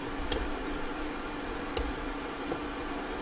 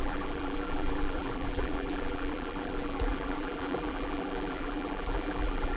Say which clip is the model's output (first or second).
second